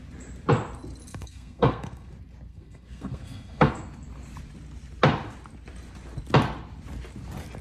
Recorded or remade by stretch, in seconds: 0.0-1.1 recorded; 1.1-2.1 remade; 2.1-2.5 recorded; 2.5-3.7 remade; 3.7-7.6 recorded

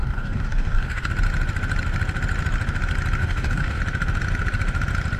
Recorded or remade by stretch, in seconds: 0.0-1.1 remade; 1.1-3.2 recorded; 3.2-3.8 remade; 3.8-5.2 recorded

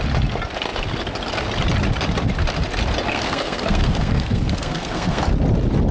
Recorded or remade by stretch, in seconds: 0.0-3.1 recorded; 3.1-5.2 remade; 5.2-5.9 recorded